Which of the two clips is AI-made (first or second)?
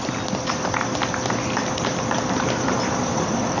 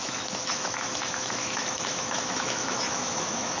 second